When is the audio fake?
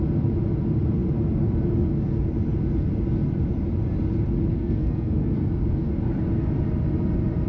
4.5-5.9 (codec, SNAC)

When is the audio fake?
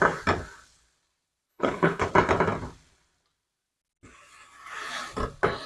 1.5-2.1 (codec, HILCodec)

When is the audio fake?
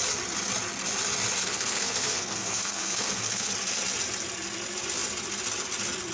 1.4-3.5 (codec, SNAC)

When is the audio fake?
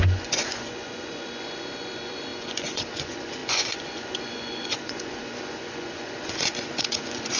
0.0-7.4 (vocoder, Vocos)